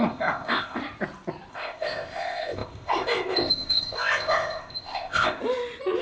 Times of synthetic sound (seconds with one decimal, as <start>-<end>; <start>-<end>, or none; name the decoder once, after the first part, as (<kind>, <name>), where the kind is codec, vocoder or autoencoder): 0.0-0.8 (codec, ZipCodec); 1.5-5.4